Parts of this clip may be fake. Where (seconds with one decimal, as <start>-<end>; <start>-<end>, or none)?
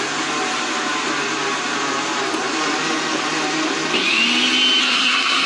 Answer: 4.8-5.5